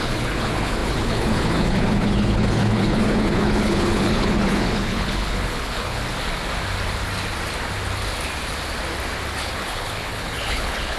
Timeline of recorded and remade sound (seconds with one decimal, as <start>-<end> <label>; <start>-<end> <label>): 0.0-6.0 remade; 6.0-9.4 recorded; 9.4-11.0 remade